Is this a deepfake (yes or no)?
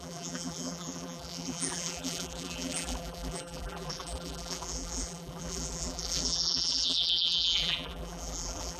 yes